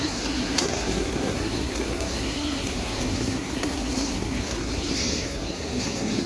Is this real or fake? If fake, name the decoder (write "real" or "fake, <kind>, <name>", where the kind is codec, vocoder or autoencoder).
fake, codec, SNAC